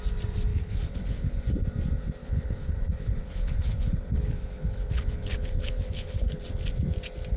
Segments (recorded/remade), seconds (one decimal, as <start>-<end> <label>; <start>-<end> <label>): 0.0-0.5 recorded; 0.5-1.4 remade; 1.4-2.2 recorded; 2.2-6.4 remade; 6.4-7.4 recorded